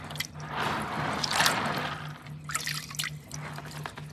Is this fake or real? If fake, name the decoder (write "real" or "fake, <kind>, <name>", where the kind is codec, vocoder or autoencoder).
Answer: real